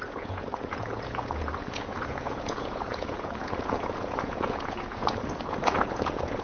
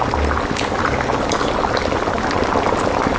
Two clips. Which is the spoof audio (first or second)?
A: first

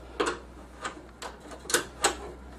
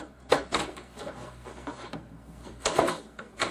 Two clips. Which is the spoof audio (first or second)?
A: second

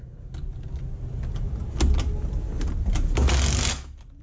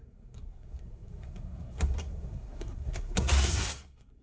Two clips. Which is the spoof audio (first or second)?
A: second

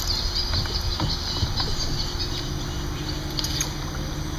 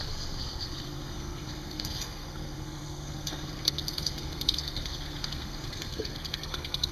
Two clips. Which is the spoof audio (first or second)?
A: second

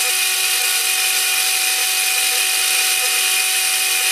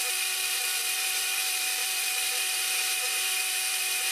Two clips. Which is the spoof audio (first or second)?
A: second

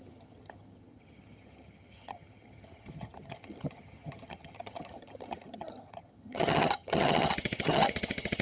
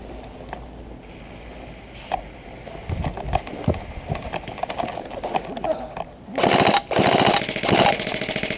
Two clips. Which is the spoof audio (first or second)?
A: first